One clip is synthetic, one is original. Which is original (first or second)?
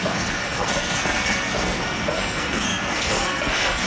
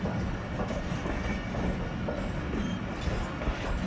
second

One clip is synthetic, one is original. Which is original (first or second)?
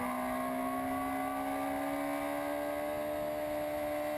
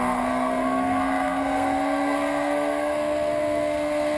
first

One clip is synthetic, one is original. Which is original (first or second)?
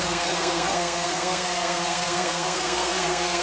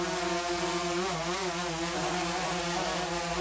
second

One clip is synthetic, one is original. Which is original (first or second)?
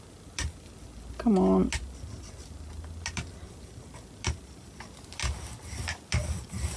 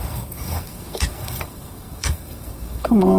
first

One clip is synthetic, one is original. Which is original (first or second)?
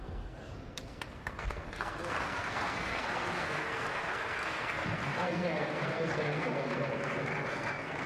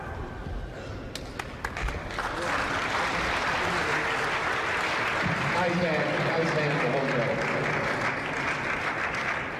second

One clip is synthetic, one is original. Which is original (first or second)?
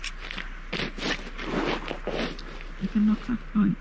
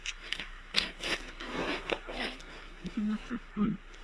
first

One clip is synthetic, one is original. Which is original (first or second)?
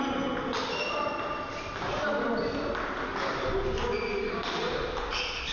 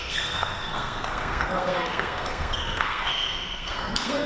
first